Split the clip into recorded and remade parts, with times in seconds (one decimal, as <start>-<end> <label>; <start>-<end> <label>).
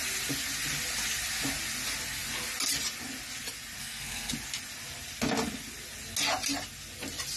0.0-3.8 recorded; 3.8-4.3 remade; 4.3-7.4 recorded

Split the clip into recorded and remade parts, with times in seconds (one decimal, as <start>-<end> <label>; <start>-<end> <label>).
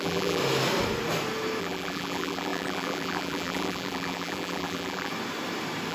0.0-0.4 remade; 0.4-1.6 recorded; 1.6-5.1 remade; 5.1-5.9 recorded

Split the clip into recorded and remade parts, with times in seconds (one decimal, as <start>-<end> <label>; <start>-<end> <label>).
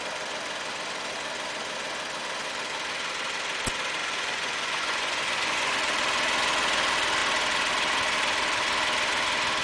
0.0-4.0 recorded; 4.0-5.7 remade; 5.7-9.6 recorded